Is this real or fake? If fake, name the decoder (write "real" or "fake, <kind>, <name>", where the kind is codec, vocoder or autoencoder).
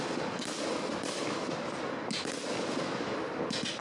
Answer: real